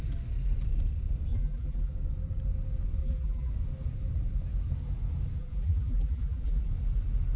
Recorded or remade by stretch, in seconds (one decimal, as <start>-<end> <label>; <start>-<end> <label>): 0.0-1.3 recorded; 1.3-1.9 remade; 1.9-3.0 recorded; 3.0-3.5 remade; 3.5-5.4 recorded; 5.4-6.7 remade; 6.7-7.4 recorded